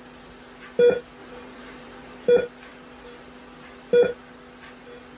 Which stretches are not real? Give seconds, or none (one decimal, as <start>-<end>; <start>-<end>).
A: 1.2-2.3